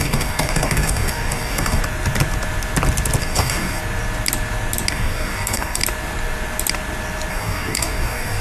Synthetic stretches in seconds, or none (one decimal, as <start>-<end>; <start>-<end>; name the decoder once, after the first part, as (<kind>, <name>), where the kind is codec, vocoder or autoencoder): 0.0-1.8 (codec, DAC); 3.2-3.8; 4.9-5.8; 7.3-8.4